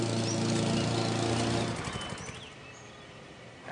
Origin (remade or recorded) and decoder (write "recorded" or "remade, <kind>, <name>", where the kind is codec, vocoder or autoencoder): recorded